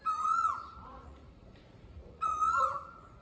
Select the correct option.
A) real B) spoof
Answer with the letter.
B